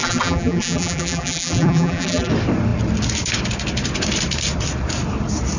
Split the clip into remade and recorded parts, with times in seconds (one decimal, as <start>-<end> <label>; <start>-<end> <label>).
0.0-2.3 remade; 2.3-5.6 recorded